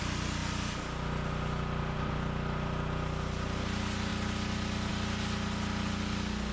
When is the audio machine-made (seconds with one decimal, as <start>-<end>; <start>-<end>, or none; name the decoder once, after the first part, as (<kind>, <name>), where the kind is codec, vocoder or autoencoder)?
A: none